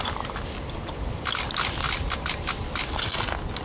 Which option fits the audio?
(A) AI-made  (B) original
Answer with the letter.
B